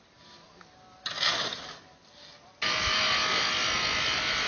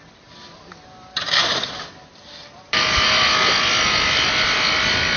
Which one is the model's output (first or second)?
second